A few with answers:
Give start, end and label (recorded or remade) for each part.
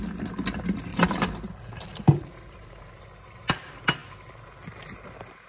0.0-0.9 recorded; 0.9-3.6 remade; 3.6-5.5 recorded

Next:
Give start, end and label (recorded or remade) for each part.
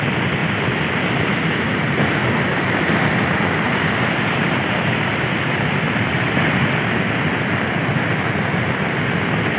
0.0-9.6 recorded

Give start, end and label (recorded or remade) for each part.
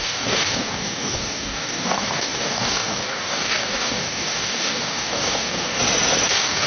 0.0-5.8 remade; 5.8-6.3 recorded; 6.3-6.7 remade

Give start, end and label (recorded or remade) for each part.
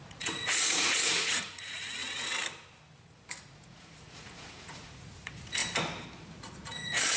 0.0-2.0 remade; 2.0-3.5 recorded; 3.5-5.6 remade; 5.6-6.3 recorded; 6.3-7.2 remade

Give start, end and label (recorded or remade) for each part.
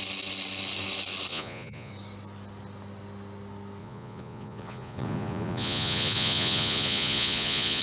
0.0-1.3 recorded; 1.3-1.9 remade; 1.9-3.8 recorded; 3.8-7.8 remade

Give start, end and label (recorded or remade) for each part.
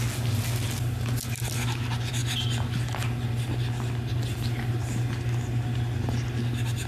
0.0-6.9 recorded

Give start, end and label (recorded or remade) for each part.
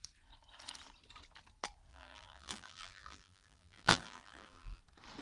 0.0-1.9 recorded; 1.9-4.8 remade; 4.8-5.2 recorded